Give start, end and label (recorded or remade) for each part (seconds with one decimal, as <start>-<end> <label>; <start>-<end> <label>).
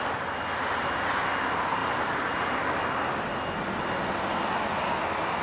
0.0-5.4 recorded